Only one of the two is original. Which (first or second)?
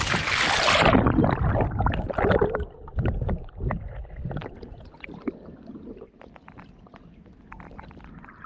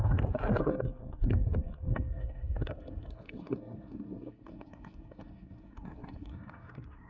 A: first